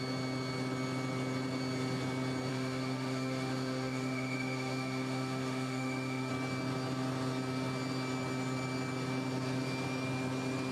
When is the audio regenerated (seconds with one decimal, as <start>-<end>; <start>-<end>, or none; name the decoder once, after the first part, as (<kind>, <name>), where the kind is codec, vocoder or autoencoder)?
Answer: 2.5-6.3 (autoencoder, DAC-VAE)